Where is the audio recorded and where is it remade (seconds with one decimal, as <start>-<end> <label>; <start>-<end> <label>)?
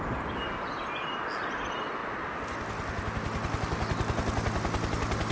0.0-5.3 recorded